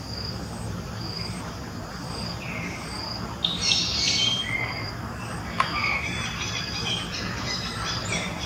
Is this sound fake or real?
fake